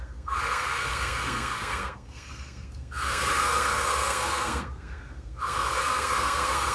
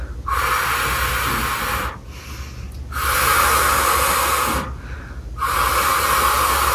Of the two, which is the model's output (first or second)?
first